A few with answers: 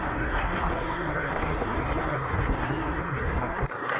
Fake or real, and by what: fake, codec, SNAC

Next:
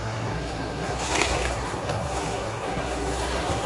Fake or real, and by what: fake, codec, SNAC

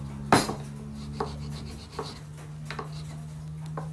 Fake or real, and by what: real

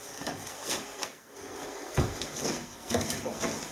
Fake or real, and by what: fake, codec, SNAC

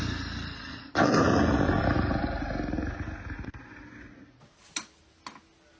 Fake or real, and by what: real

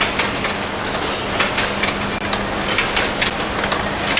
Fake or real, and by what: real